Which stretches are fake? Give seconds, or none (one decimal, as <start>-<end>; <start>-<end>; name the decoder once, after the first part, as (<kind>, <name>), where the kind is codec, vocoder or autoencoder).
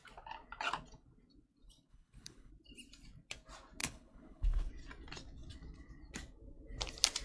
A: 1.9-2.5 (codec, HILCodec); 3.8-4.7